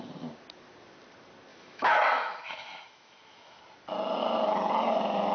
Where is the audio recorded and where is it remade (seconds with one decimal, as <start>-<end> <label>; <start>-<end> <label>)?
0.0-1.5 recorded; 1.5-3.6 remade; 3.6-5.3 recorded